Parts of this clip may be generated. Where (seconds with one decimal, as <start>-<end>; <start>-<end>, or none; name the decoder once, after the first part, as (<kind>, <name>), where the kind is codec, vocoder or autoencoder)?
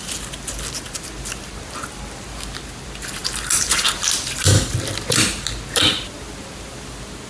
none